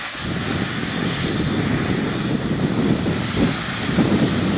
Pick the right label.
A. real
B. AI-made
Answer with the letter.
A